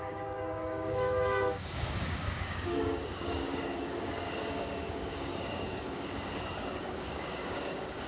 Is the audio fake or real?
fake